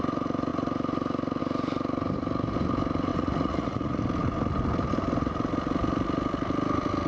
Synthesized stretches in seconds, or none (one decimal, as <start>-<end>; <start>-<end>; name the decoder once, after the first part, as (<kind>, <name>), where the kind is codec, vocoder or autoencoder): 3.1-4.0 (vocoder, Vocos)